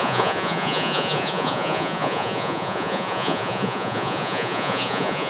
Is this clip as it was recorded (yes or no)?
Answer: no